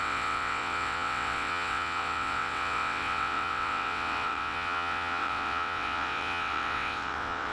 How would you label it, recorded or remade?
remade